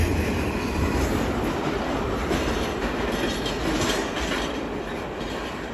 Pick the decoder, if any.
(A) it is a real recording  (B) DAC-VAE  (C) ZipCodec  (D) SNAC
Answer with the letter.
A